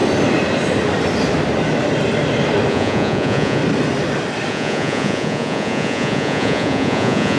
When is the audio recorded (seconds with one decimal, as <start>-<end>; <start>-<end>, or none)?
0.0-2.7; 3.6-4.5